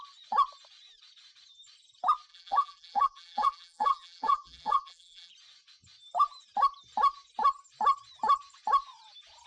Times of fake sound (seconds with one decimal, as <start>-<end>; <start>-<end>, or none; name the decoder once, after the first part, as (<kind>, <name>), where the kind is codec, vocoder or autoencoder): 2.3-5.3 (vocoder, BigVGAN v2)